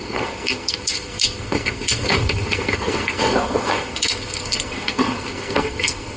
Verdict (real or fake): fake